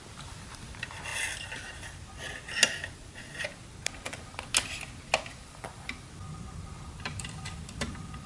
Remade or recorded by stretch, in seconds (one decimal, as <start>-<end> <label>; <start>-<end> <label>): 0.0-1.1 remade; 1.1-6.1 recorded; 6.1-8.3 remade